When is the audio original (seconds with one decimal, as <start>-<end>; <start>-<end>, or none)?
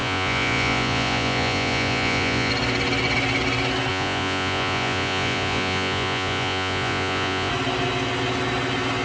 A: 2.5-3.9; 7.5-9.0